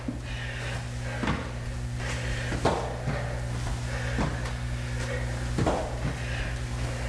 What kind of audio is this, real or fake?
real